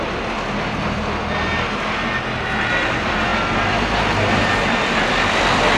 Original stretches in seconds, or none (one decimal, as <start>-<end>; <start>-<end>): 0.0-5.8